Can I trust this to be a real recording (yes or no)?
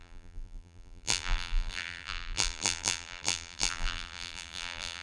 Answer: no